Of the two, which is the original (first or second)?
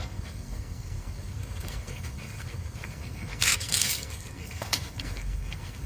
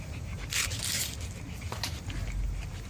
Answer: second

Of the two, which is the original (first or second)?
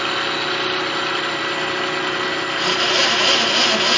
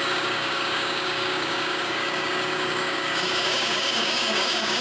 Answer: first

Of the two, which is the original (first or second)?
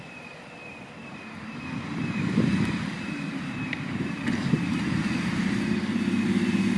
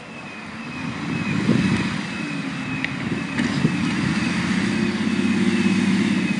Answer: second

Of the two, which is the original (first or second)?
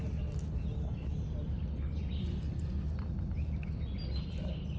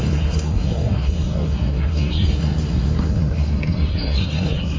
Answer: first